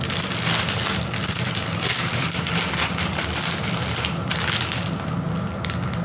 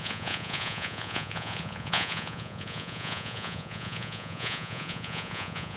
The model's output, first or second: second